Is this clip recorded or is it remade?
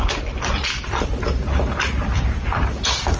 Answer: recorded